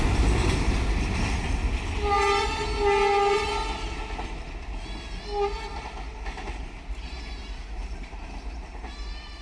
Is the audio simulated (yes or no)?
no